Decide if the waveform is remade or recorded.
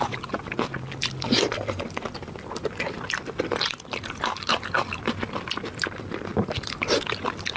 recorded